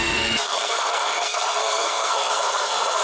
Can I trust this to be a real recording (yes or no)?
no